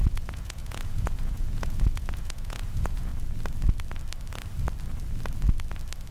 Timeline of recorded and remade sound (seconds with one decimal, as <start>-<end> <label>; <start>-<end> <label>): 0.0-3.1 remade; 3.1-6.1 recorded